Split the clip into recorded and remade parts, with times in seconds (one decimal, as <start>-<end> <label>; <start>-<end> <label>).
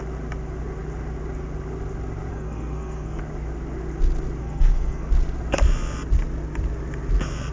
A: 0.0-2.3 recorded; 2.3-3.2 remade; 3.2-4.4 recorded; 4.4-5.1 remade; 5.1-7.5 recorded